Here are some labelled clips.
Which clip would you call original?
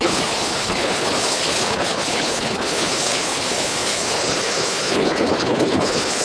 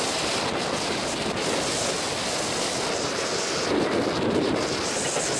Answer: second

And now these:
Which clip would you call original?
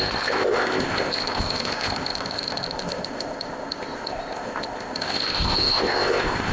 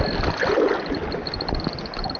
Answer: second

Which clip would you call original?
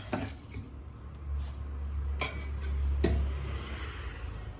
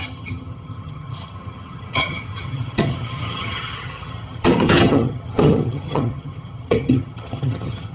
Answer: first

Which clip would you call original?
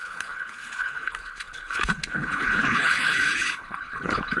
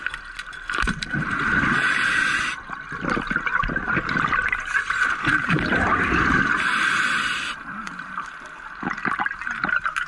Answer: second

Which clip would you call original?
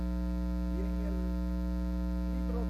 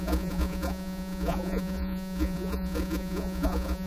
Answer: first